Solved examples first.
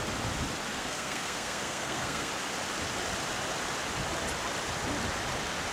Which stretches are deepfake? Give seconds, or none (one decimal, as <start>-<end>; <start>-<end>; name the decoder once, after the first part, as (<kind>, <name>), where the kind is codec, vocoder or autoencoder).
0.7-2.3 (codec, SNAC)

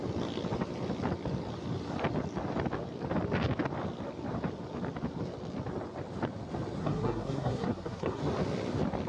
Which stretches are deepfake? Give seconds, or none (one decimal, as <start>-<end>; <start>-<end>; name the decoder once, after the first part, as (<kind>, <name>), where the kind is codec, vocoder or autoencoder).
6.8-8.2 (codec, SNAC)

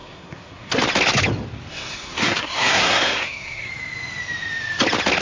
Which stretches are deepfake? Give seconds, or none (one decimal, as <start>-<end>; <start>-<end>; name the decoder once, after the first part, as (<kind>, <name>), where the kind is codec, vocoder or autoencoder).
0.0-0.8 (codec, SNAC); 1.7-3.7

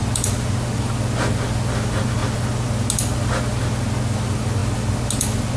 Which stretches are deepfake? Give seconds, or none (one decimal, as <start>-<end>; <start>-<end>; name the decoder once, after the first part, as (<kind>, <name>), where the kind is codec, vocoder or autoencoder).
none

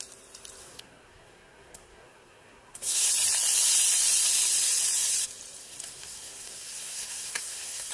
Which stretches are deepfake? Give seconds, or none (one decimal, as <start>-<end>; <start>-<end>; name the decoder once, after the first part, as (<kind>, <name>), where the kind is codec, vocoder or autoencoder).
0.6-3.1 (codec, SNAC); 5.6-7.9

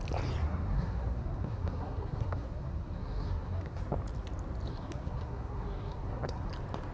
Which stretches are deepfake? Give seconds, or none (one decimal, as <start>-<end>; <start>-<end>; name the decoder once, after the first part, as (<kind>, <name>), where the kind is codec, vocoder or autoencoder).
0.4-3.8 (codec, SNAC); 4.7-6.5